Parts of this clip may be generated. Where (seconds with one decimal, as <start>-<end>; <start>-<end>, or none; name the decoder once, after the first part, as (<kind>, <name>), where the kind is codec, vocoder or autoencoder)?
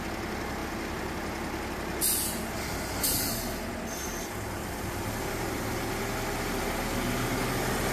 4.6-5.8 (vocoder, BigVGAN v2)